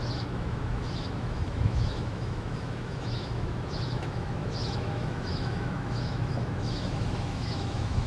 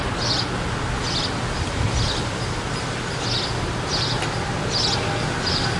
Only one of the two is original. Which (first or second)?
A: second